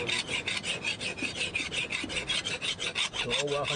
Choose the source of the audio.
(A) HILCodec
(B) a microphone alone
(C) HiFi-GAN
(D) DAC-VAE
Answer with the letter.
B